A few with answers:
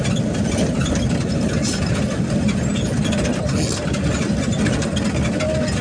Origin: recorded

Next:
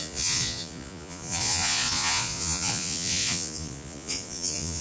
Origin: remade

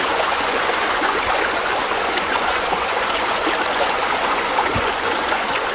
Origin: remade